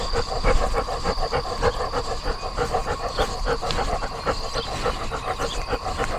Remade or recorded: recorded